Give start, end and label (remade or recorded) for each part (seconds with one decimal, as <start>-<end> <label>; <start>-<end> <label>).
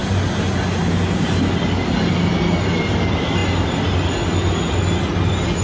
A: 0.0-5.6 recorded